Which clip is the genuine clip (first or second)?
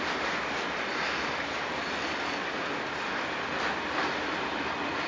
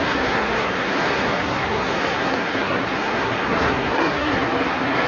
first